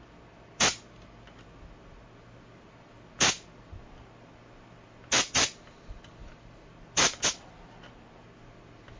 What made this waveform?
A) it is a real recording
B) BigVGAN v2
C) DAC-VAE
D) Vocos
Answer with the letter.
A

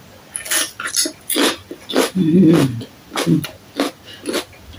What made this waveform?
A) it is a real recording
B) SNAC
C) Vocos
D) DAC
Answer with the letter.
A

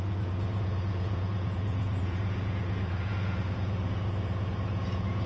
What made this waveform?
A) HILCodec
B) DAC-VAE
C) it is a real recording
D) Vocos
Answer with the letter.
D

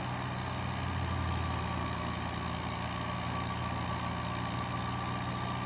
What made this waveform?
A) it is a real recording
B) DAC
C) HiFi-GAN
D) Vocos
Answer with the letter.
A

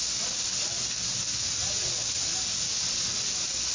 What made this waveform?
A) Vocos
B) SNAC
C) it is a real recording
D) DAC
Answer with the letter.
C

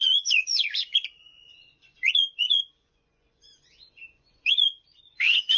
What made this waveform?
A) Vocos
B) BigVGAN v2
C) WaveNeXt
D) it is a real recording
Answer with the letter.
A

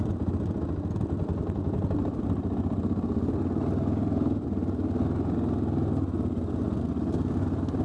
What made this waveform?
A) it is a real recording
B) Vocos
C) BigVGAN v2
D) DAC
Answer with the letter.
A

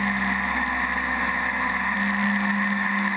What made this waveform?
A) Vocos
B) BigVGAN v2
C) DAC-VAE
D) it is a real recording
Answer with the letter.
D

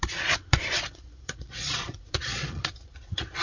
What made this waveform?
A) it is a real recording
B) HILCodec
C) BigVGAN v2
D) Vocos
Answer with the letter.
D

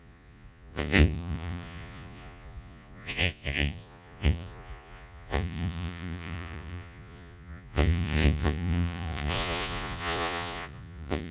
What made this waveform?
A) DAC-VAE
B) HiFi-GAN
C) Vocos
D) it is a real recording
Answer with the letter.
C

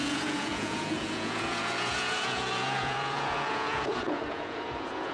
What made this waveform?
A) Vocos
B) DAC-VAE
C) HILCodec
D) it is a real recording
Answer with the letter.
A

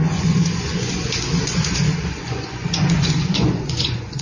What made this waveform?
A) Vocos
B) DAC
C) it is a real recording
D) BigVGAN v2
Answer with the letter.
A